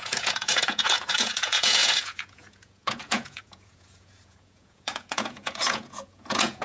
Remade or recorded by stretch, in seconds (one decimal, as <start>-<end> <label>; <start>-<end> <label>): 0.0-6.6 remade

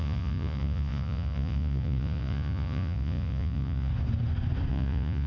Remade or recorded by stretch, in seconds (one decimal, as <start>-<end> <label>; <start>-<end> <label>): 0.0-3.9 remade; 3.9-4.7 recorded; 4.7-5.3 remade

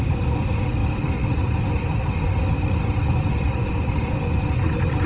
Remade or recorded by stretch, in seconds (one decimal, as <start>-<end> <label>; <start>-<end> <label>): 0.0-5.1 recorded

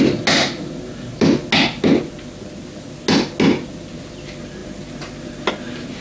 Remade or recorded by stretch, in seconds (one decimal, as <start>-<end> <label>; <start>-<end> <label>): 0.0-6.0 recorded